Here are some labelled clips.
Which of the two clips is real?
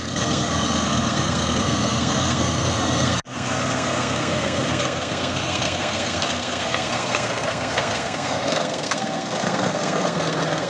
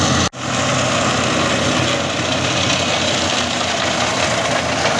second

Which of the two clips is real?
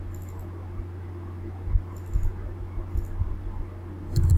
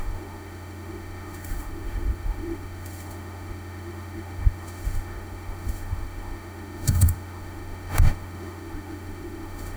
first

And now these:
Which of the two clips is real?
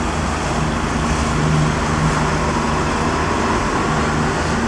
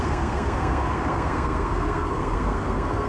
first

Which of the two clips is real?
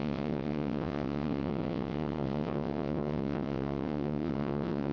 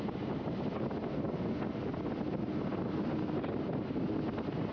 second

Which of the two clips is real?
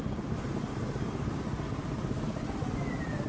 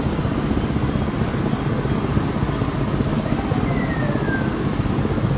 second